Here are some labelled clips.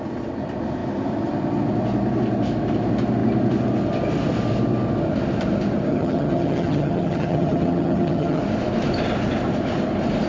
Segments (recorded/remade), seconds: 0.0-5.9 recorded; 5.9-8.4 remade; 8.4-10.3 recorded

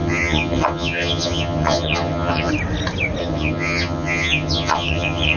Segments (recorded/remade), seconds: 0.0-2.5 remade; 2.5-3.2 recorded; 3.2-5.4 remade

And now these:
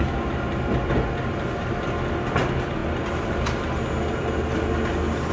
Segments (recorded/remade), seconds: 0.0-5.3 recorded

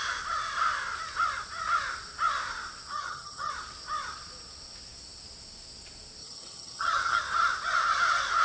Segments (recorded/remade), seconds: 0.0-2.9 recorded; 2.9-3.5 remade; 3.5-6.2 recorded; 6.2-7.2 remade; 7.2-8.4 recorded